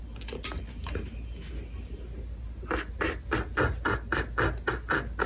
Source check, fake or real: real